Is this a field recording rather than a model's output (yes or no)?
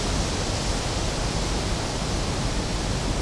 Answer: yes